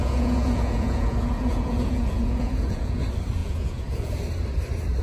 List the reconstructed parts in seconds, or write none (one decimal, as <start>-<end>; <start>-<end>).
0.0-3.0; 3.4-4.1